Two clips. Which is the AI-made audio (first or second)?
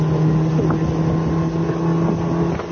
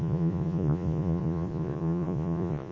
second